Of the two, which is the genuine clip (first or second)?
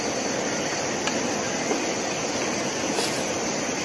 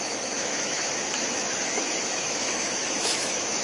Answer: first